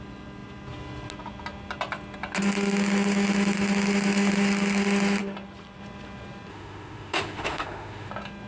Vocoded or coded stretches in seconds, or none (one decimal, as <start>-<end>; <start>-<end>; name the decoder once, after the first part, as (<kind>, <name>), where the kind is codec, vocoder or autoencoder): 6.5-8.1 (autoencoder, DAC-VAE)